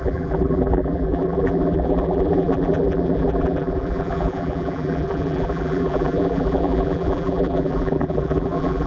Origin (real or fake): fake